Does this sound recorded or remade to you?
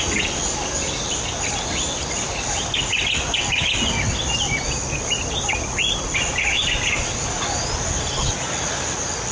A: recorded